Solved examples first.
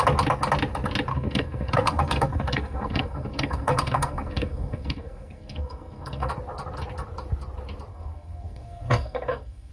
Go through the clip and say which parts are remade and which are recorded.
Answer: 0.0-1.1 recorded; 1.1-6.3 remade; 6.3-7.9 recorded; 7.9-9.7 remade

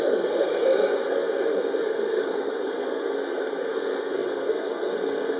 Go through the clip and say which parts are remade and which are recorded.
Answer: 0.0-5.4 remade

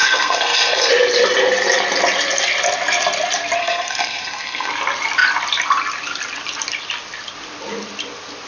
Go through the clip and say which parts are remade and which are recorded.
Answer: 0.0-0.9 remade; 0.9-3.6 recorded; 3.6-4.7 remade; 4.7-8.5 recorded

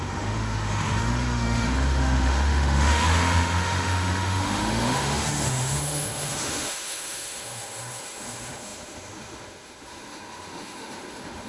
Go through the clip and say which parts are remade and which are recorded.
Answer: 0.0-11.5 remade

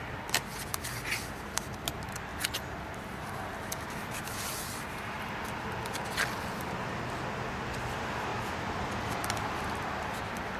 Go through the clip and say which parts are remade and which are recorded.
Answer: 0.0-10.6 recorded